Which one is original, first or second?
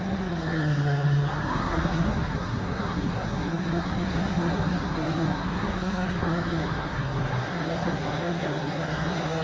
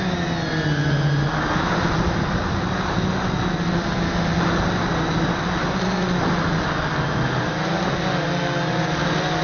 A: second